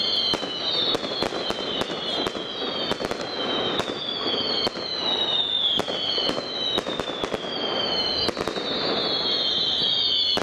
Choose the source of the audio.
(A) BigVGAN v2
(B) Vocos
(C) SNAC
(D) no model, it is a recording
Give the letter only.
D